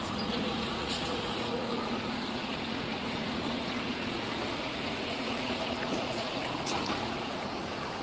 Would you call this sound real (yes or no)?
no